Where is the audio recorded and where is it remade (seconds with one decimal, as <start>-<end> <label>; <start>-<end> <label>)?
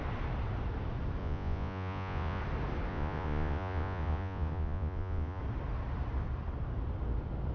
0.0-1.2 recorded; 1.2-2.4 remade; 2.4-2.9 recorded; 2.9-5.4 remade; 5.4-7.5 recorded